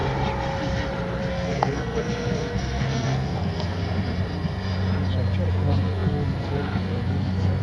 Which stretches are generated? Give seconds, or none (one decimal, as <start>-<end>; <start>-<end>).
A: 1.3-3.8; 5.5-7.6